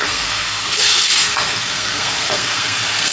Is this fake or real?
fake